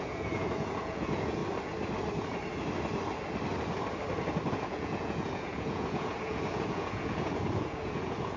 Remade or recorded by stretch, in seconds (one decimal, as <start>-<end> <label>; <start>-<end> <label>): 0.0-1.4 remade; 1.4-4.5 recorded; 4.5-8.4 remade